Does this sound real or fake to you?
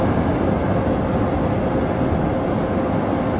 real